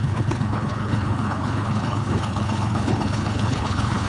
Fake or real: fake